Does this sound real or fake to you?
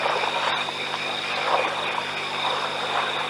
real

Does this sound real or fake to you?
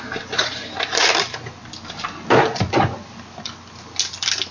real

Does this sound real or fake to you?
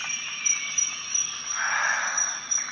real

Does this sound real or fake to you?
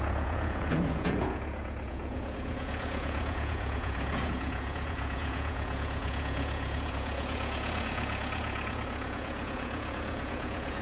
fake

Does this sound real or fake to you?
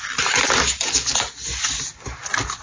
real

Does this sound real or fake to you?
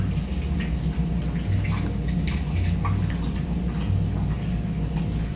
real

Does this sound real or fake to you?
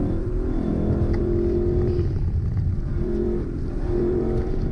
fake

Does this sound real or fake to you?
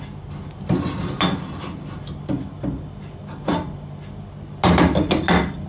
real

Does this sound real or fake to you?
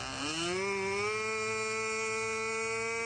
real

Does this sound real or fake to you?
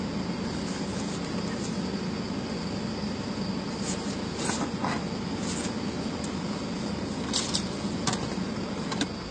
real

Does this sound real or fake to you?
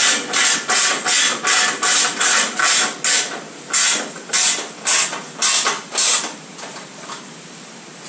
real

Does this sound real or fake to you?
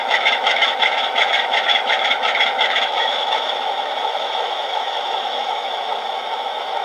fake